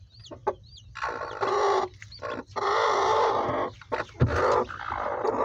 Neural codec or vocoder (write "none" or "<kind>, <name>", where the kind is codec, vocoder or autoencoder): none